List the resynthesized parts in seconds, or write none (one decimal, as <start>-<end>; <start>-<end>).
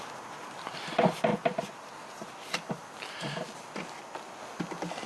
none